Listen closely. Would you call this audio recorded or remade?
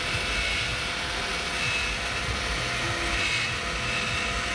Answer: recorded